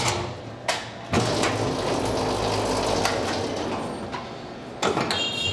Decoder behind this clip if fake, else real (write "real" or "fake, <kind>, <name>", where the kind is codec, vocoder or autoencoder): real